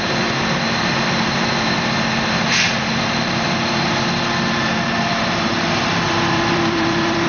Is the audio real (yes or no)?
no